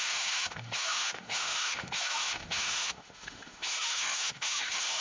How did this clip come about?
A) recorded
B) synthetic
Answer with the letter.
B